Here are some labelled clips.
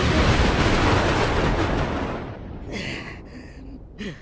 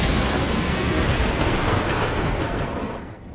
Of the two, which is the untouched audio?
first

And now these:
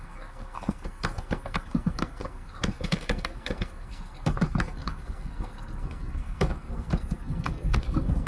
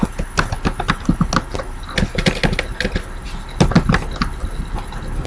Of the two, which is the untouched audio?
second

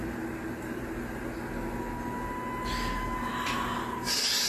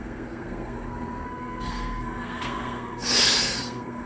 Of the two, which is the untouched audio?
first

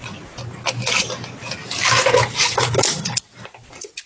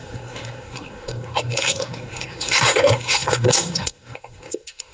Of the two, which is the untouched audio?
first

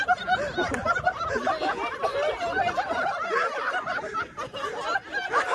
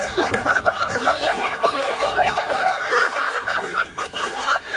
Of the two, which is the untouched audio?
first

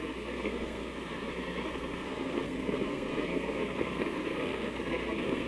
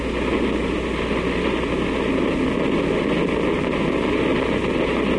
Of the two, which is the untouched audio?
second